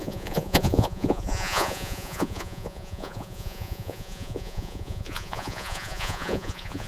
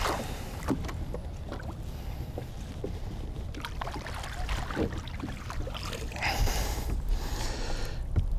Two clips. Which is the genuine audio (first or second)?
second